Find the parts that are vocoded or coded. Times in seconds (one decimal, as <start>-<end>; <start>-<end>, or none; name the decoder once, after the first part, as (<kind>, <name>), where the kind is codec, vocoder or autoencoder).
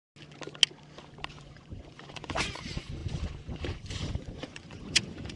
1.3-5.4 (vocoder, Vocos)